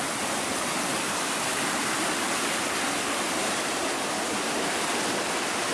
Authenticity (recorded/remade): remade